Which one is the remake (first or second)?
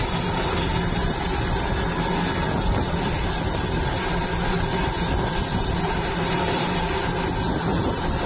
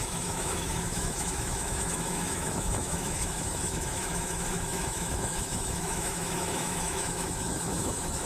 second